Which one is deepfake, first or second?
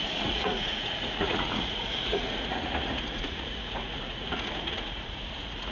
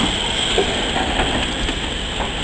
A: first